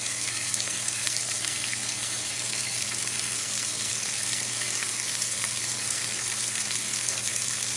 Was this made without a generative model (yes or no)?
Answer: no